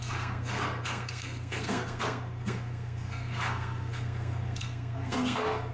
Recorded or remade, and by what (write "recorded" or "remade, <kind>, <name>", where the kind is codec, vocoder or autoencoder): remade, codec, SNAC